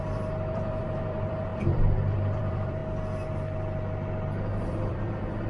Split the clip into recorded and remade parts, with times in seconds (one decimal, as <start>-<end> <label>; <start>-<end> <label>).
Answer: 0.0-2.8 remade; 2.8-4.7 recorded; 4.7-5.5 remade